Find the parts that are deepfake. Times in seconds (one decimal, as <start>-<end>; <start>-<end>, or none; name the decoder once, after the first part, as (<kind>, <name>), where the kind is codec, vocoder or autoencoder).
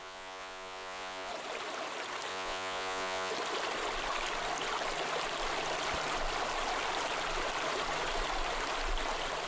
0.0-1.3 (vocoder, Vocos); 2.3-3.3